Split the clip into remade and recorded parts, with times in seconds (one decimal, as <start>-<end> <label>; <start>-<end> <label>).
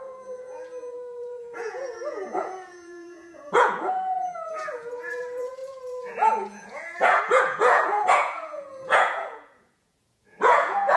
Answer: 0.0-11.0 remade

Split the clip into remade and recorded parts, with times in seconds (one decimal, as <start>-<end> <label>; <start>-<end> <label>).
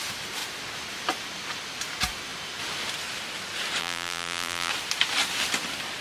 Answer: 0.0-3.8 recorded; 3.8-4.7 remade; 4.7-6.0 recorded